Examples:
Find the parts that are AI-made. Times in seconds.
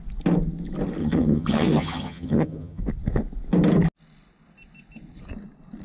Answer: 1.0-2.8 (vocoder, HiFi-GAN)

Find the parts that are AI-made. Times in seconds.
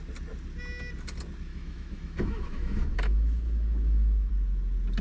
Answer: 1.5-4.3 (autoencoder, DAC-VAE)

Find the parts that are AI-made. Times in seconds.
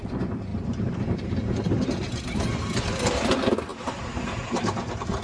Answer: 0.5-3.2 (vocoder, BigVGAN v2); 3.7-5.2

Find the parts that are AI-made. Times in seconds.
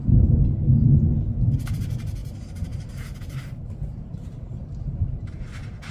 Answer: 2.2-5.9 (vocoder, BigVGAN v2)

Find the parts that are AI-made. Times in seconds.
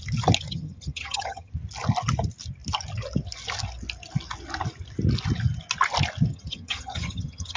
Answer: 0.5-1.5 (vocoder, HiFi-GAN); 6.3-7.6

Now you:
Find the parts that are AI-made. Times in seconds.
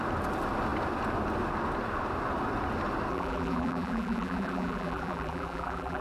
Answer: 3.1-6.0 (vocoder, BigVGAN v2)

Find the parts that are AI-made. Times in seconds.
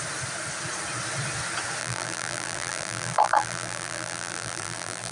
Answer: 1.8-5.1 (vocoder, BigVGAN v2)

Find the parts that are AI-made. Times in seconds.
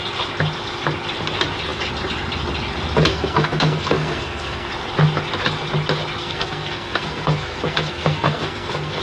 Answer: 3.1-4.7 (codec, SNAC); 6.2-9.0